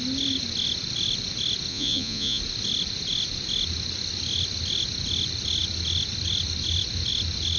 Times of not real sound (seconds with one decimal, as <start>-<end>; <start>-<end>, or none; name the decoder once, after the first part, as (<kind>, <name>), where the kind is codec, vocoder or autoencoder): 1.7-2.4 (vocoder, Vocos)